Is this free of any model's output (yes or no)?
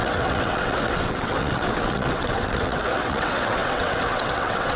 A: no